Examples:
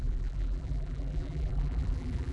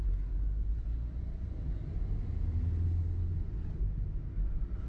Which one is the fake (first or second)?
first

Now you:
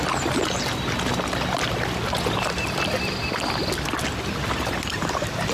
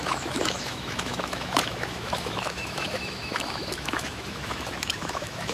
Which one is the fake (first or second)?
second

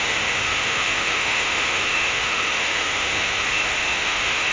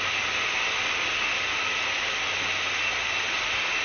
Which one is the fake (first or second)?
first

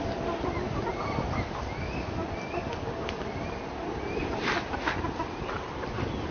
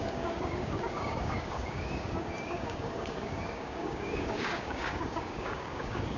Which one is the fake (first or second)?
second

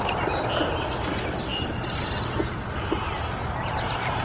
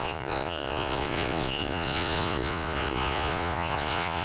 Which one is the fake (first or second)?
second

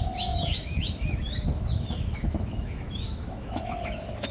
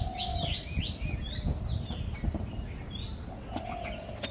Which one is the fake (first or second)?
first